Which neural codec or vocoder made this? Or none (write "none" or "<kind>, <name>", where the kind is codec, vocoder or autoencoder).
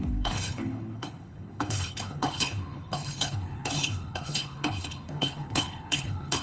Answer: codec, HILCodec